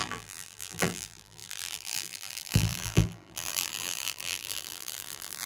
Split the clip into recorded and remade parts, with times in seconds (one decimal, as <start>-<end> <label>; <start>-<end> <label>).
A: 0.0-5.5 remade